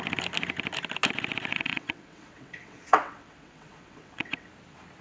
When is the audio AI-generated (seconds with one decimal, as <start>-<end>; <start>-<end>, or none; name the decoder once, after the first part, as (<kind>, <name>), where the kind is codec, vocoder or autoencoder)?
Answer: 1.5-4.5 (vocoder, WaveNeXt)